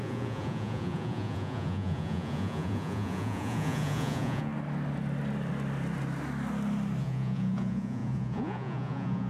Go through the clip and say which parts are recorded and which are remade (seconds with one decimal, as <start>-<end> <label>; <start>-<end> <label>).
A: 0.0-4.5 remade; 4.5-7.0 recorded; 7.0-9.3 remade